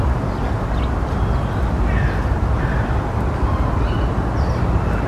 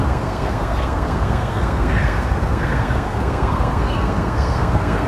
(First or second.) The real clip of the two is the first